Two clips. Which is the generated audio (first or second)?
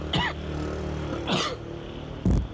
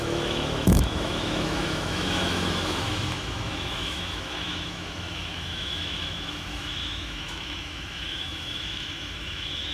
second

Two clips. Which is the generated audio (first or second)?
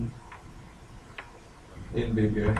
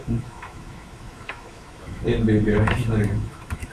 second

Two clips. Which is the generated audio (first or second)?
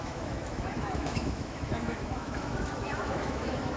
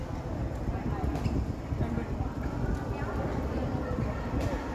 first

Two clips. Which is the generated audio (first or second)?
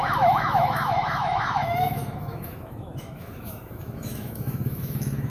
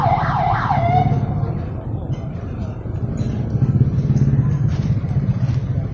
first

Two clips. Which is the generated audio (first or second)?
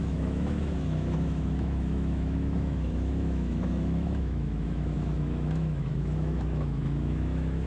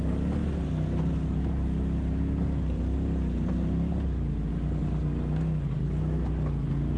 first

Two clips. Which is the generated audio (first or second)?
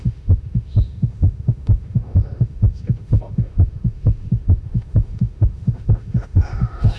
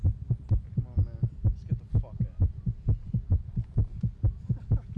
first